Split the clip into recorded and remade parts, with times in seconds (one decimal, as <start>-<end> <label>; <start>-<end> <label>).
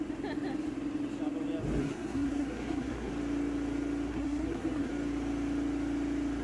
0.0-1.8 recorded; 1.8-3.1 remade; 3.1-4.1 recorded; 4.1-4.9 remade; 4.9-6.4 recorded